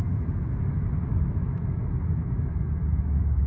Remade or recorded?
remade